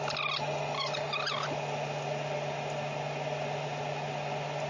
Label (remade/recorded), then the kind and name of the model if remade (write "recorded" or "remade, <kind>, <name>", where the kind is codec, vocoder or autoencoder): recorded